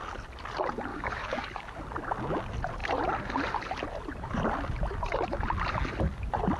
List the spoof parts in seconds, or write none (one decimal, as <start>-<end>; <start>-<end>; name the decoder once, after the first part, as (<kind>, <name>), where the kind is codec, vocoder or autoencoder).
0.9-1.6 (codec, DAC)